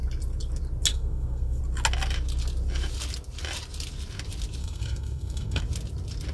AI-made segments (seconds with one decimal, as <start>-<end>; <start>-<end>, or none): 0.9-1.6; 4.6-5.6